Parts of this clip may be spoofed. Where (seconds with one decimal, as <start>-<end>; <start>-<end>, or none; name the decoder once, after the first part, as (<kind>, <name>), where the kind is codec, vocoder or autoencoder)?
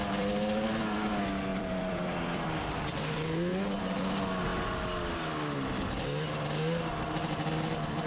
0.0-0.8 (vocoder, BigVGAN v2); 1.5-3.8